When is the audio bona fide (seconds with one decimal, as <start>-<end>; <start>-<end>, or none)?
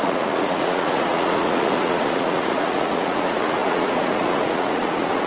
none